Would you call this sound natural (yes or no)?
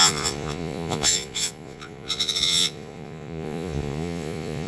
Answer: no